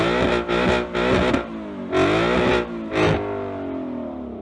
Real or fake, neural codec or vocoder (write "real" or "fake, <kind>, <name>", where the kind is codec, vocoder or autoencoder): real